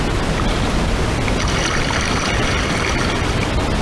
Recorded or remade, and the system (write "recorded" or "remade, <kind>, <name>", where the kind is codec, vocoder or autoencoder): recorded